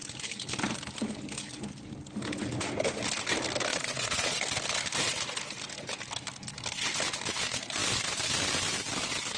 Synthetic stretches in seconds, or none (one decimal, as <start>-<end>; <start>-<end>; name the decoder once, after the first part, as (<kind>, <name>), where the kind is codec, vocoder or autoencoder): 3.7-4.4 (vocoder, Vocos)

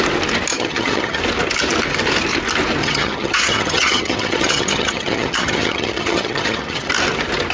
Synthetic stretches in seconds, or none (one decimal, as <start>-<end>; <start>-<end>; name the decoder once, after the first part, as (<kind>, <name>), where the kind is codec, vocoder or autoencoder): 0.5-1.2 (vocoder, HiFi-GAN); 2.8-6.9

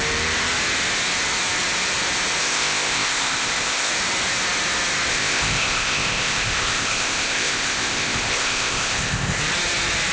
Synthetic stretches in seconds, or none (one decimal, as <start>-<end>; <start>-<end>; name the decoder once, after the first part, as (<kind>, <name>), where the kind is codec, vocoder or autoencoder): 2.4-3.9 (codec, ZipCodec); 5.1-9.4